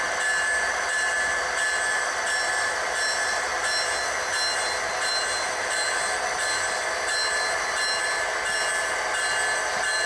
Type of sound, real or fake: real